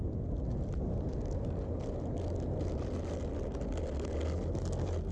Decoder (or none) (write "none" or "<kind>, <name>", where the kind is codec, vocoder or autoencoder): none